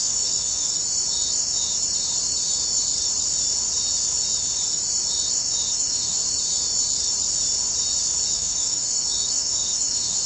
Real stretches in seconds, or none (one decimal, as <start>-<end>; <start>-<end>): 0.7-5.7; 6.2-8.3